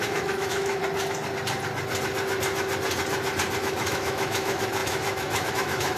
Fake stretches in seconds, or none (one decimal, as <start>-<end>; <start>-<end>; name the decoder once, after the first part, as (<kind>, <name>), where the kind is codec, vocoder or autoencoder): 0.0-0.8 (autoencoder, DAC-VAE); 3.6-6.0